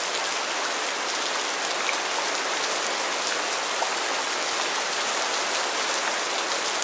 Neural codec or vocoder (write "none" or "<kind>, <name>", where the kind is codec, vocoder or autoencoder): none